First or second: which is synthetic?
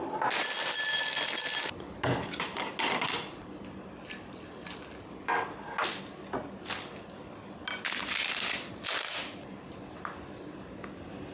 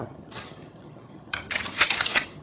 second